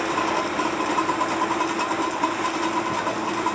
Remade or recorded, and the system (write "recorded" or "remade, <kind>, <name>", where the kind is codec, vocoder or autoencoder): recorded